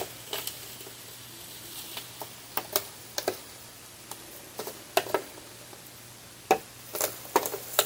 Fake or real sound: real